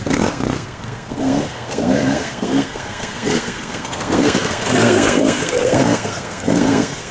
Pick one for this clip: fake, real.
fake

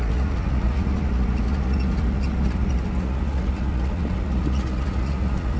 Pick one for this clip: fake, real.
fake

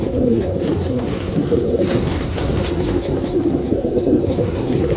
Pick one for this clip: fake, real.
fake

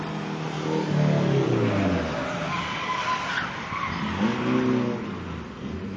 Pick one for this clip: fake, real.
real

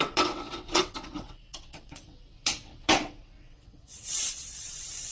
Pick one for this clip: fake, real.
fake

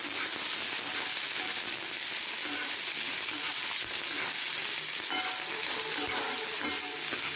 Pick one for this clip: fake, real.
real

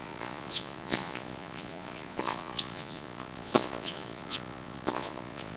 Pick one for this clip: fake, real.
fake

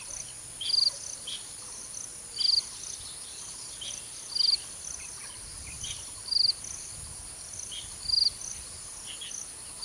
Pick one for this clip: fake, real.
real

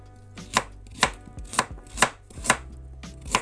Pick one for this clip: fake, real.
real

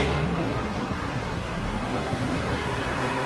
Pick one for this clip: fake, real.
fake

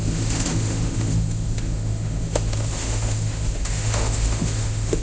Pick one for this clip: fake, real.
fake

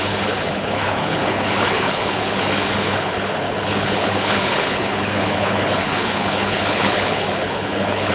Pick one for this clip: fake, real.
fake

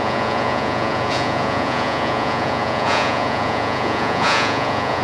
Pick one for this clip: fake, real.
fake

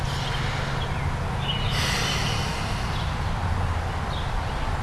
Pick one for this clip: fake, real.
real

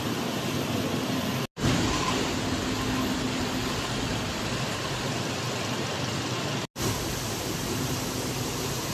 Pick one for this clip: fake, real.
real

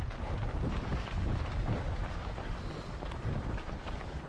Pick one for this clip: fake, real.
real